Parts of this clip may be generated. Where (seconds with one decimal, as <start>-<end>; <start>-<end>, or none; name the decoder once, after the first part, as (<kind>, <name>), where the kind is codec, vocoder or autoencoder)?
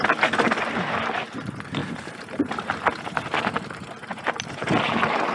none